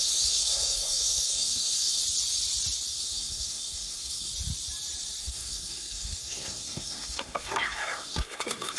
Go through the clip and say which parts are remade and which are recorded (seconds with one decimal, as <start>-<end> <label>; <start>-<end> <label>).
0.0-2.0 remade; 2.0-2.9 recorded; 2.9-4.3 remade; 4.3-5.2 recorded; 5.2-8.8 remade